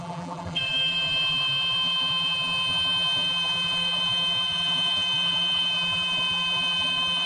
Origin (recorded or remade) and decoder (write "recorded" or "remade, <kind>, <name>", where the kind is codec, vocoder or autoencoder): remade, vocoder, BigVGAN v2